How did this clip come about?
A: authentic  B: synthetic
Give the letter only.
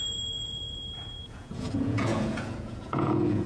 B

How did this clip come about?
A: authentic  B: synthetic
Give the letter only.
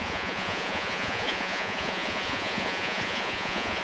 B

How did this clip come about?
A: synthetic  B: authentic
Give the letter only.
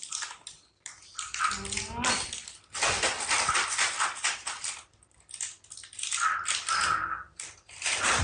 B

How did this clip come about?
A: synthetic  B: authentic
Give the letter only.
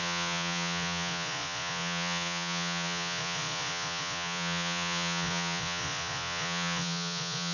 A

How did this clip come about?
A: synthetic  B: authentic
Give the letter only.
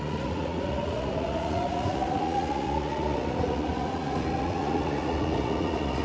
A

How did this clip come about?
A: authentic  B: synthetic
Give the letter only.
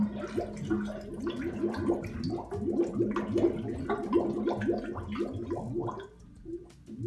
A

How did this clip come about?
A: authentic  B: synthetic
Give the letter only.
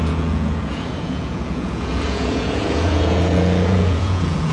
B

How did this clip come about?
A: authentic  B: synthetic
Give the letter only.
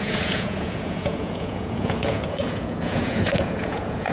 B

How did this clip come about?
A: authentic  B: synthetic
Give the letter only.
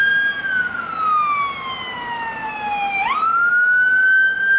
A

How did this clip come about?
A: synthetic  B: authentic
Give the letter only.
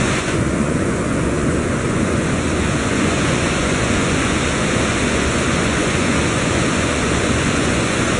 A